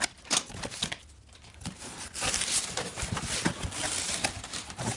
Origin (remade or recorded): recorded